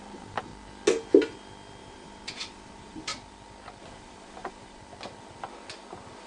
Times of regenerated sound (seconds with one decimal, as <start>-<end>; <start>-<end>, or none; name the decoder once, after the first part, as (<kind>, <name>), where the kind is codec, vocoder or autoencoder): 0.0-0.5 (vocoder, BigVGAN v2); 1.8-3.1; 3.8-4.8